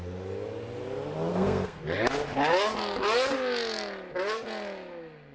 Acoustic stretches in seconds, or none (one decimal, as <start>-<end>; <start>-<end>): 0.0-1.3; 1.8-5.3